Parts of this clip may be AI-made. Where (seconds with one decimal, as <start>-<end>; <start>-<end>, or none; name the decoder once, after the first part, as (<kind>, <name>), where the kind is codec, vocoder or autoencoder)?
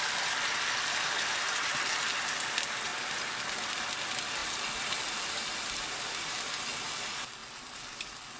none